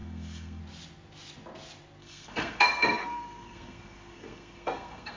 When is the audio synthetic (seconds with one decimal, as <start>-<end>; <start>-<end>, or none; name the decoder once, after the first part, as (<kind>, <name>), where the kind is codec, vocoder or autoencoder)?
0.0-0.6 (codec, SNAC); 2.0-5.2

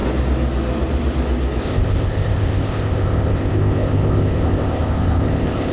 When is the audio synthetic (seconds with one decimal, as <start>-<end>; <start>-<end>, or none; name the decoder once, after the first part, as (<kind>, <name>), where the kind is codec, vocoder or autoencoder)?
1.6-5.7 (codec, ZipCodec)

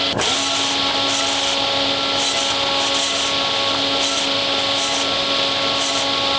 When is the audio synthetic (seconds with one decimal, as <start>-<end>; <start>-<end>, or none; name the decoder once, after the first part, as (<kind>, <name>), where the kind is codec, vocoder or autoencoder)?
none

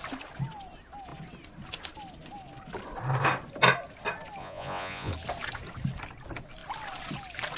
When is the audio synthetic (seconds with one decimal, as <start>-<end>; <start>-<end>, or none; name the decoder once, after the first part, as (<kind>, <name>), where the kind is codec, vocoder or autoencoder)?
4.4-5.1 (vocoder, Vocos)

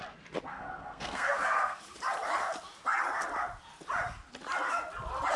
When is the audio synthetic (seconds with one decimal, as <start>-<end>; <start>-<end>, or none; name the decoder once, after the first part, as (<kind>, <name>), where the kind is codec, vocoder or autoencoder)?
0.5-1.8 (codec, SNAC)